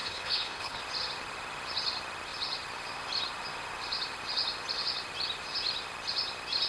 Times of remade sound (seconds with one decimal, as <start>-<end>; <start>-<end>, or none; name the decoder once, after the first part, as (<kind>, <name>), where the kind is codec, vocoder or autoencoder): 0.0-0.8 (codec, HILCodec)